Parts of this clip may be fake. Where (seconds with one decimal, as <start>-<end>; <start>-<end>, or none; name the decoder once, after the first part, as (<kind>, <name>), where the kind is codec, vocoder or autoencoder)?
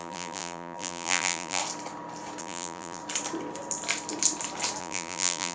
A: 0.0-1.6 (vocoder, BigVGAN v2); 2.4-3.0; 4.8-5.5